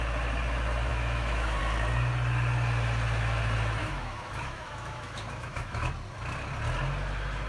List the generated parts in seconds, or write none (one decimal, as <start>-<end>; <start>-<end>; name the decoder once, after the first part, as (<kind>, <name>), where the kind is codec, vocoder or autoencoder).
0.9-1.6 (autoencoder, DAC-VAE); 3.8-5.9